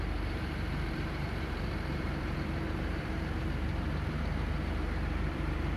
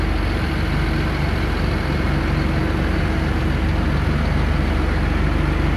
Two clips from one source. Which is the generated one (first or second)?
first